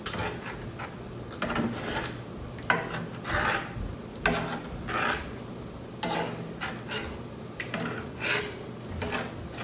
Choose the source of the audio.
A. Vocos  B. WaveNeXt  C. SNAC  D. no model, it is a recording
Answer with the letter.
D